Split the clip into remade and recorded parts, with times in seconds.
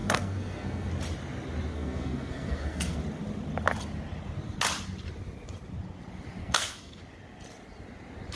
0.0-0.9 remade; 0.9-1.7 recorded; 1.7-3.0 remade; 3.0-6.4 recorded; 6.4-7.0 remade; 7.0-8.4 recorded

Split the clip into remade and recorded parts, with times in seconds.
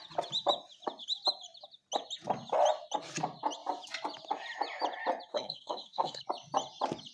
0.0-5.3 recorded; 5.3-6.2 remade; 6.2-7.1 recorded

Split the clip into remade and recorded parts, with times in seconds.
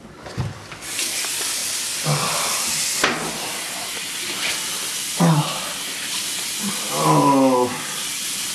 0.0-8.5 recorded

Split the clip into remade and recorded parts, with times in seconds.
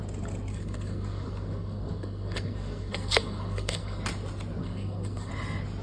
0.0-0.5 recorded; 0.5-4.0 remade; 4.0-4.6 recorded; 4.6-5.3 remade; 5.3-5.8 recorded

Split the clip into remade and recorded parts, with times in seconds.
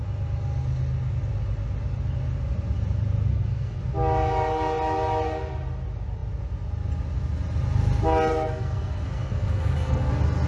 0.0-3.3 recorded; 3.3-3.8 remade; 3.8-8.3 recorded; 8.3-10.1 remade; 10.1-10.5 recorded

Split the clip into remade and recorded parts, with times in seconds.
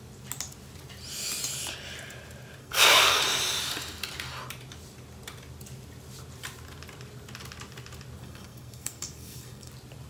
0.0-2.6 recorded; 2.6-3.2 remade; 3.2-8.2 recorded; 8.2-9.7 remade; 9.7-10.1 recorded